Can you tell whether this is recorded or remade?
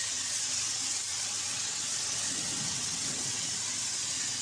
remade